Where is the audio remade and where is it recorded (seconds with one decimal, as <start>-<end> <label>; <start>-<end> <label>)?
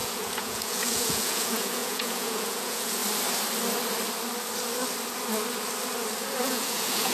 0.0-3.0 remade; 3.0-6.4 recorded; 6.4-7.1 remade